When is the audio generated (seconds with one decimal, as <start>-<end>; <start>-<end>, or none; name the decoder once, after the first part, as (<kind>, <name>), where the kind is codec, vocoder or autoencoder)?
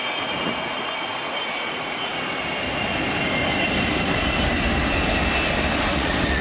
0.0-2.1 (vocoder, Vocos); 5.9-6.4